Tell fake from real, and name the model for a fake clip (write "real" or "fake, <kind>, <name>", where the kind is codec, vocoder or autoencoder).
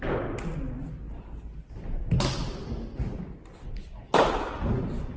real